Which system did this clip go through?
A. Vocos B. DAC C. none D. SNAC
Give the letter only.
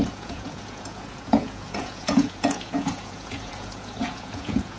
A